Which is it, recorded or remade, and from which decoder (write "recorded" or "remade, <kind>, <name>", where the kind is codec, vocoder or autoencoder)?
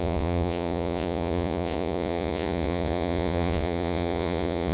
remade, vocoder, Vocos